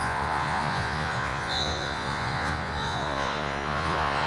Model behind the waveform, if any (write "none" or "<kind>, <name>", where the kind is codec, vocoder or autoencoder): vocoder, Vocos